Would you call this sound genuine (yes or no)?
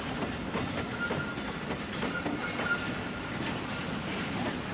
yes